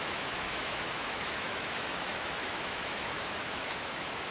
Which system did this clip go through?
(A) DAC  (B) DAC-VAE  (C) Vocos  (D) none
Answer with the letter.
B